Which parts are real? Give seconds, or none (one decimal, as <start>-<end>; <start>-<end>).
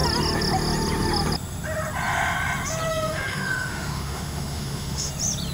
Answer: 0.0-2.9; 5.1-5.5